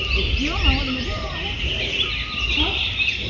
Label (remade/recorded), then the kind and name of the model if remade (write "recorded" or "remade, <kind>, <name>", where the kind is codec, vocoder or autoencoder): recorded